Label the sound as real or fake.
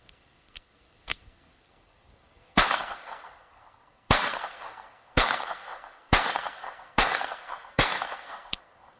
fake